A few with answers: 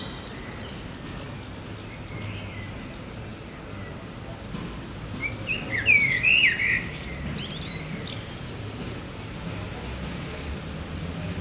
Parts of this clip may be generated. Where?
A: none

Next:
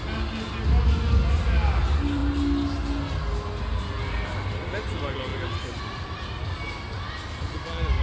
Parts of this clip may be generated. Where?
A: none

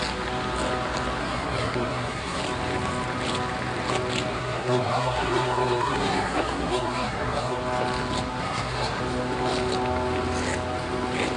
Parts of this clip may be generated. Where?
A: 1.2-2.4 (codec, SNAC); 4.3-7.6; 8.4-9.0

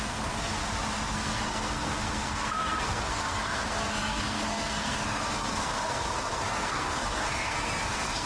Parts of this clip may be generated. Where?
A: 0.0-0.6 (codec, SNAC); 1.1-8.3

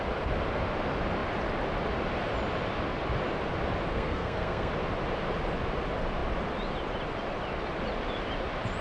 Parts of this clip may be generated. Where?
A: 3.9-4.7 (codec, SNAC)

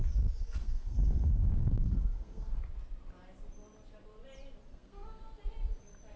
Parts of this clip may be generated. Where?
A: 0.6-2.6 (codec, SNAC); 4.7-5.2

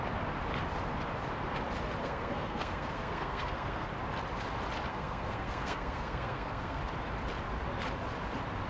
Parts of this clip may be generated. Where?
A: 2.0-3.9 (codec, SNAC); 4.9-6.8

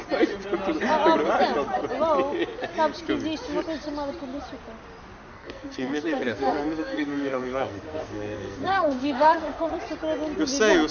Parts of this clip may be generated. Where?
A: 5.3-9.7 (codec, SNAC)